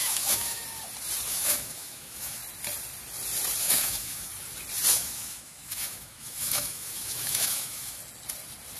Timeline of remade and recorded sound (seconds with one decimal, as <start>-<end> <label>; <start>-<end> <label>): 0.0-0.6 remade; 0.6-1.3 recorded; 1.3-2.4 remade; 2.4-3.6 recorded; 3.6-4.3 remade; 4.3-4.9 recorded; 4.9-8.0 remade; 8.0-8.8 recorded